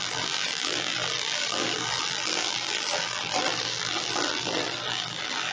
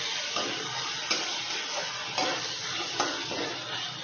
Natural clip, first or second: second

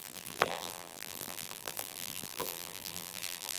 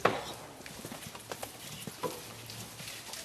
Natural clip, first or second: second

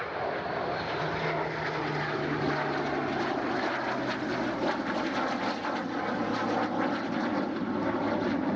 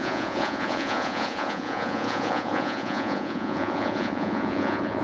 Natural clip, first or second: first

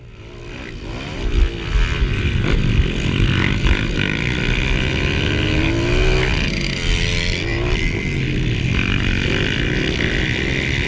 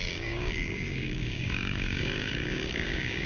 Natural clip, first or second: first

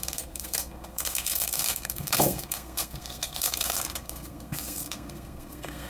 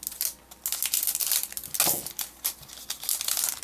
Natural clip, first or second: second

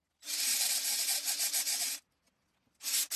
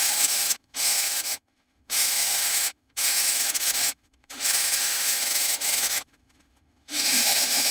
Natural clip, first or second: first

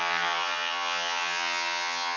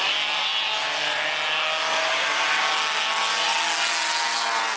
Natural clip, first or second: second